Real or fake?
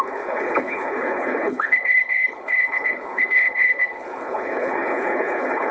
fake